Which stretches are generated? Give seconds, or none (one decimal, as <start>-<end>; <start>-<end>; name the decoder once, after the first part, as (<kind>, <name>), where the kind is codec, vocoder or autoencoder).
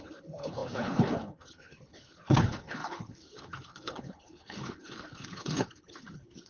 0.0-6.5 (codec, HILCodec)